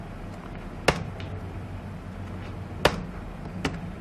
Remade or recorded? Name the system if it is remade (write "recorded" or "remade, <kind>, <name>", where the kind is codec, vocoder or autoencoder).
recorded